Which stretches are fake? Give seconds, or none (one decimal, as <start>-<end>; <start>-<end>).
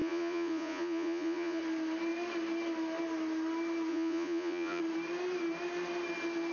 0.0-1.6; 3.9-4.8